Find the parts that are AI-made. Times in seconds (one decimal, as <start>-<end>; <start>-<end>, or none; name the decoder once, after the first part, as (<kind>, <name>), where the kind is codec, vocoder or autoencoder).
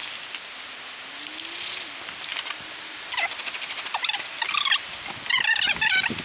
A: none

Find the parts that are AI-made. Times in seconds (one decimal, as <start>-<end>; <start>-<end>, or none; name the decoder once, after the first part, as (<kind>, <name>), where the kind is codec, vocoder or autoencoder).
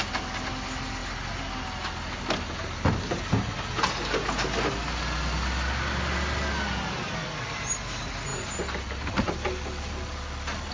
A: none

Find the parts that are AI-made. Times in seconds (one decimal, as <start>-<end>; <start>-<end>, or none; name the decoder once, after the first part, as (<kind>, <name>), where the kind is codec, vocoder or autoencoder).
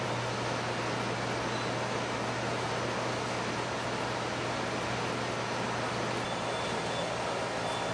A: none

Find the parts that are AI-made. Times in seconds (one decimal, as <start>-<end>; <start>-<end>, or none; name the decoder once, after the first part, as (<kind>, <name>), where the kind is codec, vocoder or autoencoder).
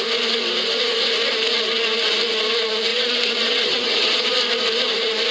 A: 2.9-4.3 (vocoder, WaveNeXt)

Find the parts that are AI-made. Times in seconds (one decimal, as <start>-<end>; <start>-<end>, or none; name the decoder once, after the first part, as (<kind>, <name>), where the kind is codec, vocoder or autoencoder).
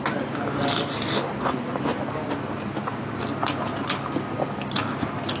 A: none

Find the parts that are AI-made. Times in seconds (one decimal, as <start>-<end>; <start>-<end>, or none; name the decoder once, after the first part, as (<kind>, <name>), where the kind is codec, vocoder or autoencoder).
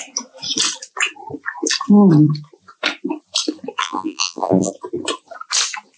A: 3.8-4.7 (vocoder, BigVGAN v2)